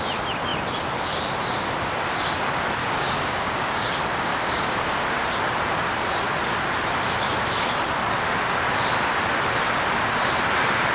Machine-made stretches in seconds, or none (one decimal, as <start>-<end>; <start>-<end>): 2.8-3.9; 4.3-5.0

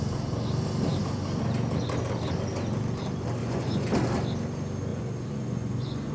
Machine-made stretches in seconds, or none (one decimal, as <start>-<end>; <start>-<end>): 3.4-3.9; 4.9-6.1